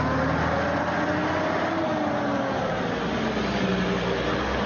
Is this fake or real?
real